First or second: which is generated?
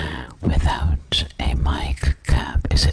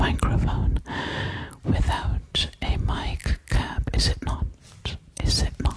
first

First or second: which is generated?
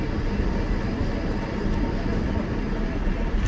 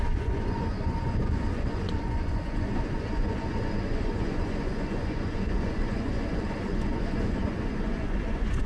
second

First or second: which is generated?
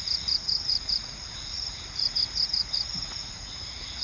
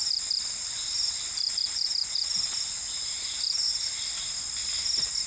first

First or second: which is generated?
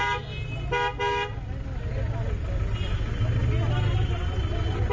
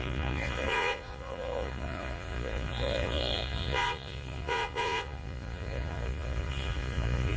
second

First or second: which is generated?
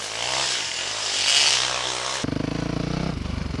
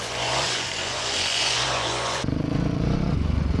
second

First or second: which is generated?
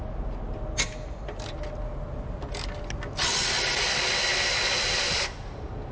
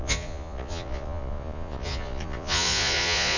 second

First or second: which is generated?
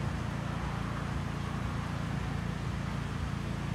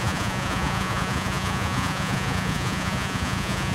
second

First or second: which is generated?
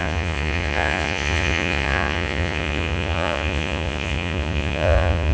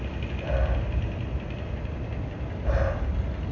first